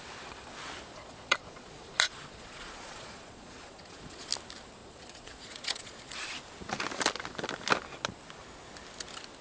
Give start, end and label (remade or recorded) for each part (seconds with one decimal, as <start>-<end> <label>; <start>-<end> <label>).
0.0-0.9 recorded; 0.9-4.3 remade; 4.3-4.8 recorded; 4.8-6.0 remade; 6.0-9.4 recorded